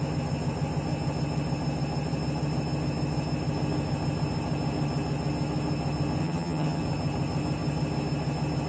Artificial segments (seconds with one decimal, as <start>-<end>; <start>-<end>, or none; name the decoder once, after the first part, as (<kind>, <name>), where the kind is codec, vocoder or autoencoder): 6.2-6.8 (vocoder, HiFi-GAN)